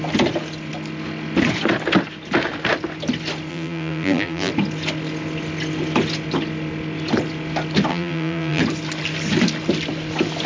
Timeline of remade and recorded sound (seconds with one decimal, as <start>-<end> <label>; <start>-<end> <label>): 0.0-3.5 recorded; 3.5-4.5 remade; 4.5-7.9 recorded; 7.9-8.6 remade; 8.6-10.5 recorded